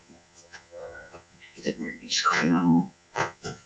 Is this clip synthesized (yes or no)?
yes